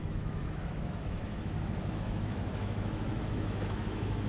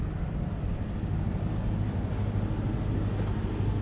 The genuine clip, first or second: second